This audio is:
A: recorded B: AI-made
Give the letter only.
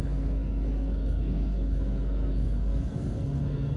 B